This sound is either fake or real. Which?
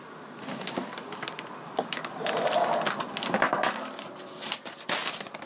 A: real